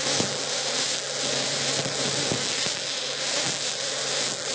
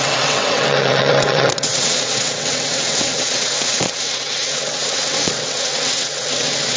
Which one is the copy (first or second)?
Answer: second